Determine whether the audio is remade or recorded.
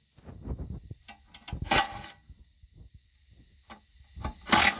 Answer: recorded